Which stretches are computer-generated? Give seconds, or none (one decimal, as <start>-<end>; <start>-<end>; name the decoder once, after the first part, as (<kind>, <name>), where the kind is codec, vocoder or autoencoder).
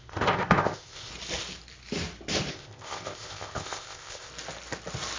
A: 0.0-1.1 (codec, ZipCodec); 2.5-4.3